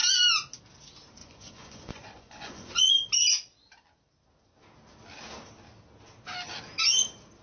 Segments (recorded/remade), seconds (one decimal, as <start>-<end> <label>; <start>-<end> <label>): 0.0-1.2 recorded; 1.2-2.9 remade; 2.9-7.4 recorded